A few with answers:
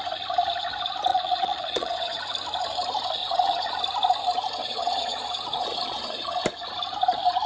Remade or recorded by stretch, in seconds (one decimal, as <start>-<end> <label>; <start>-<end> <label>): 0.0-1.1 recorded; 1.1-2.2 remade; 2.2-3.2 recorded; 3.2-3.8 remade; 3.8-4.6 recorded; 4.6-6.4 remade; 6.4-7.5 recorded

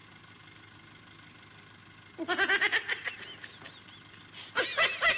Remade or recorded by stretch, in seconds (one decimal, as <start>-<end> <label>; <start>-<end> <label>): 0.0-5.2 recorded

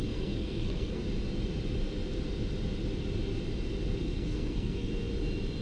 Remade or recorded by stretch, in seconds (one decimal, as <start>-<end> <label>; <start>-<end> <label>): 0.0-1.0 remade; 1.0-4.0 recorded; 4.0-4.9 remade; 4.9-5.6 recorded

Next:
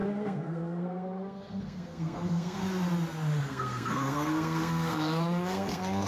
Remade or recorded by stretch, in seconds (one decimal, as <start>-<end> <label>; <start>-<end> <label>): 0.0-2.6 remade; 2.6-3.4 recorded; 3.4-6.1 remade

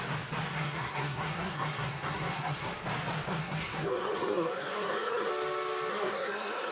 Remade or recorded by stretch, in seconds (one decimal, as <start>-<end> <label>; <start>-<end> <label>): 0.0-0.5 recorded; 0.5-2.7 remade; 2.7-3.3 recorded; 3.3-5.3 remade; 5.3-5.9 recorded; 5.9-6.7 remade